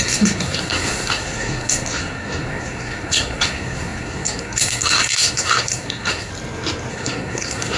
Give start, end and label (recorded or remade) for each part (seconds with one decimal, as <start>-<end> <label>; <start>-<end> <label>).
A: 0.0-6.3 remade; 6.3-6.9 recorded; 6.9-7.8 remade

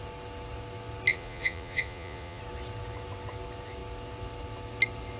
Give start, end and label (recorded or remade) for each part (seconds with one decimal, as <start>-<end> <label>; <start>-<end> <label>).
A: 0.0-1.1 recorded; 1.1-2.4 remade; 2.4-5.2 recorded

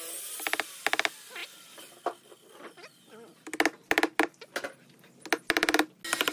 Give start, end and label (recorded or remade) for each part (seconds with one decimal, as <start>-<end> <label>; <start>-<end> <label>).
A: 0.0-6.3 recorded

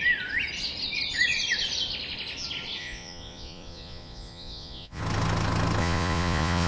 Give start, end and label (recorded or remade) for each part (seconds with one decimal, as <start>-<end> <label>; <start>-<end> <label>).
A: 0.0-2.8 recorded; 2.8-5.0 remade; 5.0-5.8 recorded; 5.8-6.7 remade

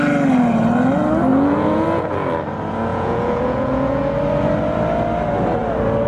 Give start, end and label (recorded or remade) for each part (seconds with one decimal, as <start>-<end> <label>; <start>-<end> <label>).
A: 0.0-1.3 recorded; 1.3-2.1 remade; 2.1-2.9 recorded; 2.9-4.0 remade; 4.0-6.1 recorded

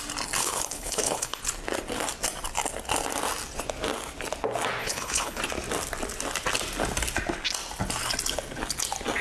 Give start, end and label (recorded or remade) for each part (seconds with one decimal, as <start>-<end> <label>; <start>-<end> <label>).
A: 0.0-0.4 recorded; 0.4-1.4 remade; 1.4-4.8 recorded; 4.8-5.4 remade; 5.4-9.2 recorded